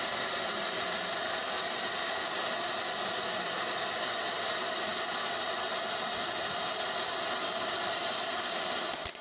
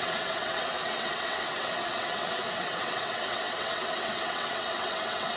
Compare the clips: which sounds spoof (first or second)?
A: second